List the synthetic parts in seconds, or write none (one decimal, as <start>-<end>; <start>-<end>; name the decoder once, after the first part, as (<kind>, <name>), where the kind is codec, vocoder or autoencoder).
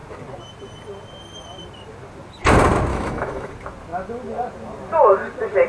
2.9-3.5 (autoencoder, DAC-VAE)